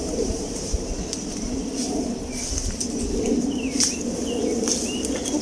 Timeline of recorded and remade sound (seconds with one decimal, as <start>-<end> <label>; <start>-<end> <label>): 0.0-1.3 remade; 1.3-5.4 recorded